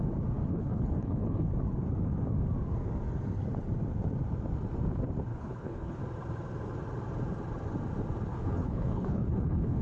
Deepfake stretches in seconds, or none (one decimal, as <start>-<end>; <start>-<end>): 0.5-1.5; 5.3-6.0; 8.3-9.8